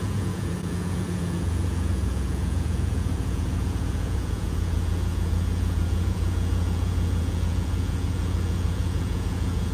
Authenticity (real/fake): fake